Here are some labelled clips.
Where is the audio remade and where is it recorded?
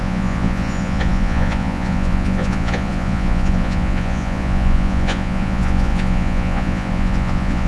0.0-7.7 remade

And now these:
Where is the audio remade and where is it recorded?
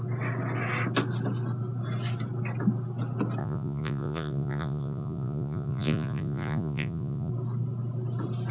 0.0-3.4 recorded; 3.4-7.3 remade; 7.3-8.5 recorded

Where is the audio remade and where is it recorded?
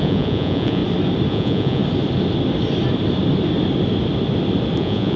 0.0-0.8 remade; 0.8-1.3 recorded; 1.3-1.8 remade; 1.8-4.8 recorded; 4.8-5.2 remade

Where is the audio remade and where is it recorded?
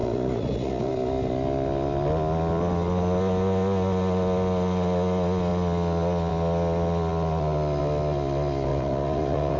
0.0-0.9 remade; 0.9-8.7 recorded; 8.7-9.6 remade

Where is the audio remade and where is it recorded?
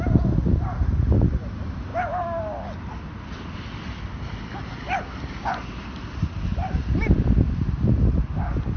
0.0-8.8 recorded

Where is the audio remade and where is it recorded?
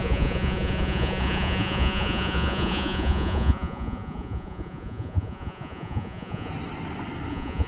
0.0-6.5 remade; 6.5-7.3 recorded; 7.3-7.7 remade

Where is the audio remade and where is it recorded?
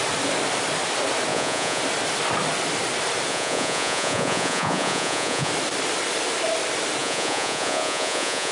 0.0-1.3 recorded; 1.3-1.8 remade; 1.8-3.3 recorded; 3.3-5.5 remade; 5.5-7.0 recorded; 7.0-8.5 remade